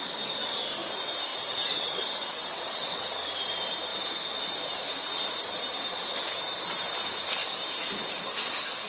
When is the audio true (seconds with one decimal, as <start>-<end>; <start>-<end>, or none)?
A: 0.0-1.3; 3.0-8.9